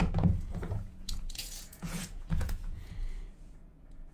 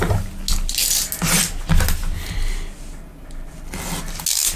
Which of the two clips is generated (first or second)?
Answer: first